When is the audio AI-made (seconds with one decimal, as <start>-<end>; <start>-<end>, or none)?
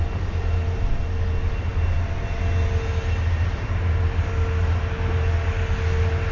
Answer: none